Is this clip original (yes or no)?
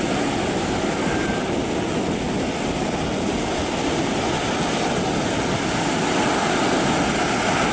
yes